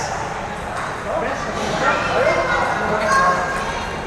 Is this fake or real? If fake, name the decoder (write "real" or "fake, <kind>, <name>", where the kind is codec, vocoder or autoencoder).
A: fake, vocoder, BigVGAN v2